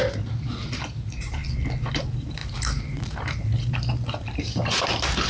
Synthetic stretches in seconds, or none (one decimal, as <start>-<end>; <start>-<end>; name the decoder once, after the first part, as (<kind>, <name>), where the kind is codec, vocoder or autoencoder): 0.0-1.4 (vocoder, BigVGAN v2); 1.9-5.3